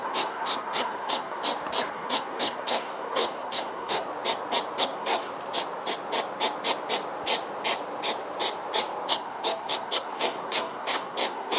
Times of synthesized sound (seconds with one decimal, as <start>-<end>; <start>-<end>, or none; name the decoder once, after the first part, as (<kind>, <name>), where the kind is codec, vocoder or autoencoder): 0.0-1.4 (codec, SNAC); 1.9-4.1; 4.8-5.3; 9.1-11.6